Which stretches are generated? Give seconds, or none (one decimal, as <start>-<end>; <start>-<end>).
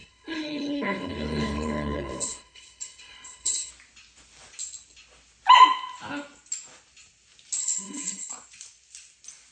0.0-3.7; 7.6-8.3